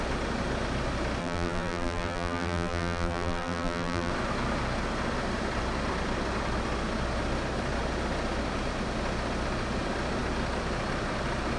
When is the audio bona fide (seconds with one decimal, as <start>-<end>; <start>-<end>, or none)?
0.0-1.2; 4.1-11.6

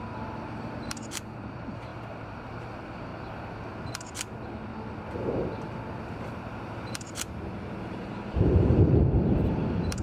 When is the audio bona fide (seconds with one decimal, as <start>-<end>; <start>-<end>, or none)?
3.1-7.8

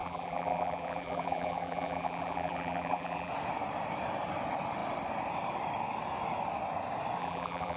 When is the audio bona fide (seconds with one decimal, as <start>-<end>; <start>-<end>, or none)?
3.3-7.2

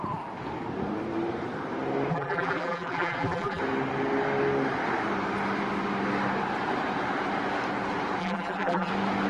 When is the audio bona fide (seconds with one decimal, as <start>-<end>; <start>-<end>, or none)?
0.0-2.1; 3.6-8.2; 8.9-9.3

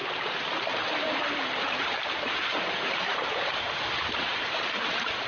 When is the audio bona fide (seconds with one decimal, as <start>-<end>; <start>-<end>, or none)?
3.0-5.3

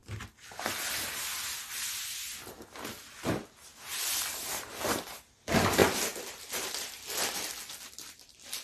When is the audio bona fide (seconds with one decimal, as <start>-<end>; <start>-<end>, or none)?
0.0-3.7; 4.9-5.8; 7.5-8.6